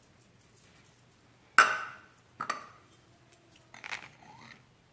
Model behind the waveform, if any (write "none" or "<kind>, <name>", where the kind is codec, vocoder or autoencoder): none